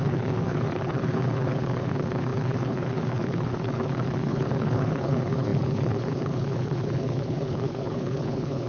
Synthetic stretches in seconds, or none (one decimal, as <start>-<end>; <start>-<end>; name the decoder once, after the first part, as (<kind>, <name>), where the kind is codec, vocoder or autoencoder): 0.0-8.7 (codec, HILCodec)